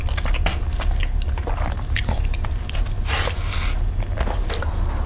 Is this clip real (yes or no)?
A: yes